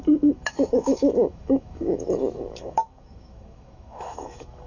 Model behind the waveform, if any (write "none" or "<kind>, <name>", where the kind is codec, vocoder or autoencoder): autoencoder, DAC-VAE